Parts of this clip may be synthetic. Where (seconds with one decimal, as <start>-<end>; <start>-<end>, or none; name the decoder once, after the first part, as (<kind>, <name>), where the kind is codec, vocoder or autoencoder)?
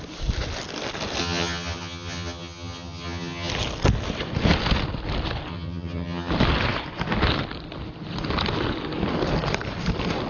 1.2-3.5 (vocoder, HiFi-GAN); 5.5-6.3